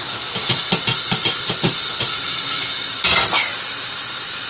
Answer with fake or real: real